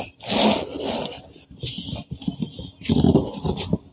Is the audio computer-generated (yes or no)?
no